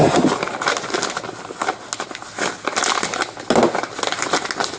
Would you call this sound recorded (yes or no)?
yes